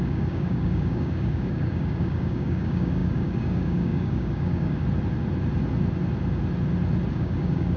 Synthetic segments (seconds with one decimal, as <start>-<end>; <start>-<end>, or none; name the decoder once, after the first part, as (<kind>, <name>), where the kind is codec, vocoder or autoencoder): 0.0-4.8 (codec, DAC); 7.1-7.8